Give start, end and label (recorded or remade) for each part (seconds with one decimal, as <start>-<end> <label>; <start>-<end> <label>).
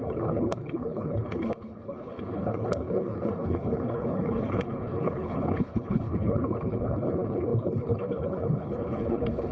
0.0-9.5 remade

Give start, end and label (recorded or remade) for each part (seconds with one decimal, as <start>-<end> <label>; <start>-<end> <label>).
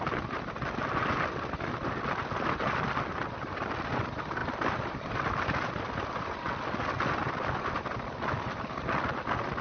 0.0-4.4 recorded; 4.4-6.6 remade; 6.6-9.6 recorded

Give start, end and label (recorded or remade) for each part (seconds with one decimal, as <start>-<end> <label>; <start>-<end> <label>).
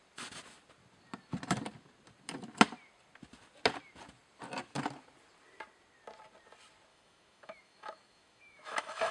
0.0-6.9 recorded; 6.9-9.1 remade